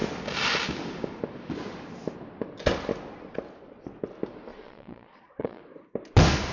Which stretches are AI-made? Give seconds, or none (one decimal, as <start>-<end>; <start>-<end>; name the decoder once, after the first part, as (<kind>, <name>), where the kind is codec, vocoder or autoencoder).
4.5-5.6 (vocoder, Vocos)

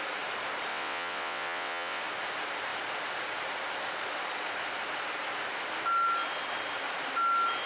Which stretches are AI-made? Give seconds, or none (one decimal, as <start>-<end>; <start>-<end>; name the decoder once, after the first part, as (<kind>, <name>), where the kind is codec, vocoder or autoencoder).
0.7-2.0 (vocoder, WaveNeXt)

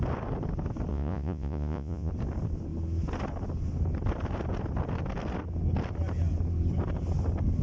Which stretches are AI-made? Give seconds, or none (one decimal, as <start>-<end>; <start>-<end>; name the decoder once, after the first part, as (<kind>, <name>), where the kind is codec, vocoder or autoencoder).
0.9-2.1 (vocoder, Vocos)

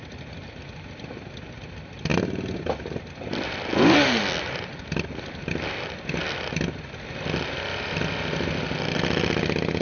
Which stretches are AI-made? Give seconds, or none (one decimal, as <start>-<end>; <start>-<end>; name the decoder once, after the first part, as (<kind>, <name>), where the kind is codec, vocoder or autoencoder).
none

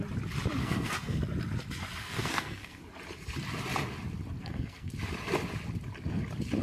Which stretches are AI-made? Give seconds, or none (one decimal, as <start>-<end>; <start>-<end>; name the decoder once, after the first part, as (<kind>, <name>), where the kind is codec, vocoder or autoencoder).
0.6-1.2 (codec, SNAC); 2.0-2.8; 4.4-4.9